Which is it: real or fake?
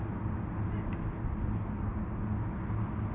real